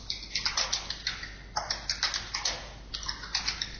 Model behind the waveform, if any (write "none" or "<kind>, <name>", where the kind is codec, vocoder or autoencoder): none